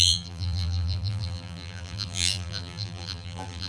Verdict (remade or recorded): remade